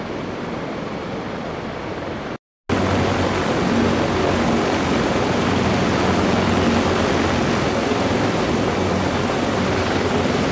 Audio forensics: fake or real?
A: real